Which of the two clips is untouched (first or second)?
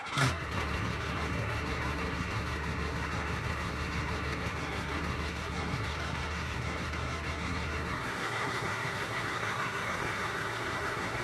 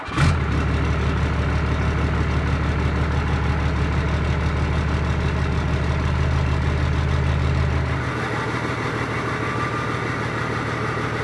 second